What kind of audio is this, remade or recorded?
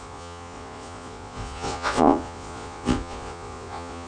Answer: remade